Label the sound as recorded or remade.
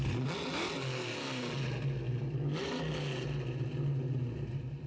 recorded